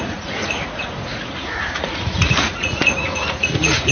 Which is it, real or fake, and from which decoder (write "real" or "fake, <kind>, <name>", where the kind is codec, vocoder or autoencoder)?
fake, vocoder, Vocos